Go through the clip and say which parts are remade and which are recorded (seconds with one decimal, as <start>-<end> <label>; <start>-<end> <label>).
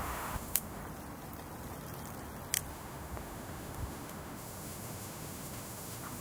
0.0-0.8 remade; 0.8-2.7 recorded; 2.7-6.2 remade